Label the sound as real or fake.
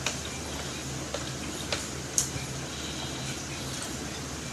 real